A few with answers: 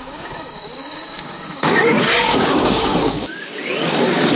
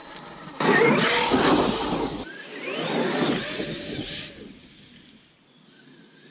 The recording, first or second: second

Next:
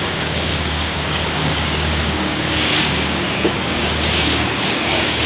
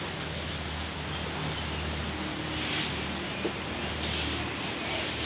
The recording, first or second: second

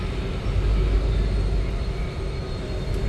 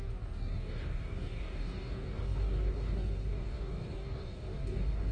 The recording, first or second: first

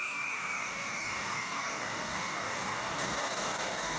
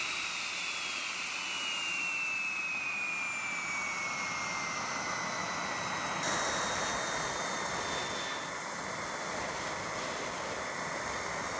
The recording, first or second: second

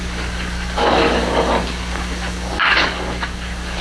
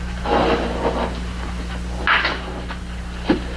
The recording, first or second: second